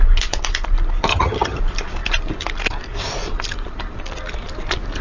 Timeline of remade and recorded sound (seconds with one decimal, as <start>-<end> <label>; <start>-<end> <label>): 0.0-1.1 recorded; 1.1-1.6 remade; 1.6-5.0 recorded